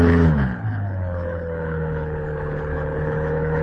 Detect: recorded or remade remade